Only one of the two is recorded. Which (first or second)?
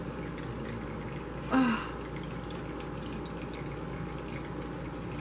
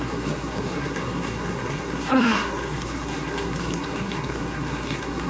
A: first